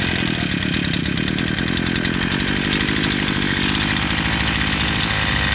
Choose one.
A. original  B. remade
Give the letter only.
A